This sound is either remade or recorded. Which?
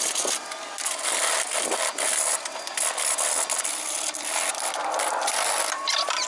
recorded